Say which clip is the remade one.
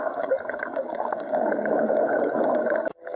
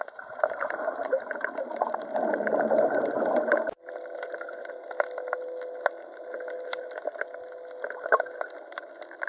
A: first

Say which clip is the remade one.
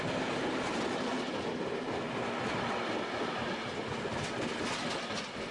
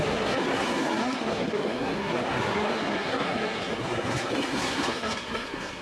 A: second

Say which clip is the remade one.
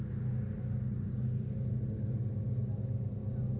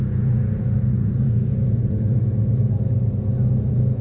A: second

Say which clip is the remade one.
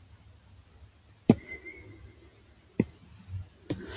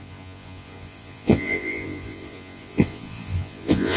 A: second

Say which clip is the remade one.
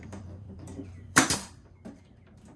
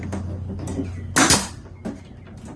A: first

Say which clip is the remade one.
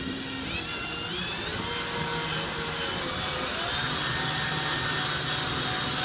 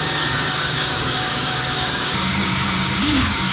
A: second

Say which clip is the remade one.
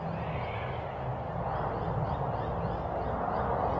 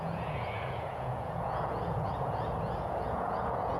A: second